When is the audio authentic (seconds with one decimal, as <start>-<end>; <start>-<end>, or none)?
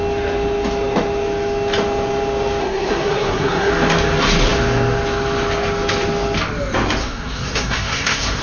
0.0-2.6; 3.7-7.0